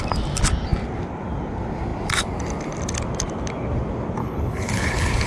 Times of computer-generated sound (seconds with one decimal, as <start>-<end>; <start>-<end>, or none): 4.2-5.3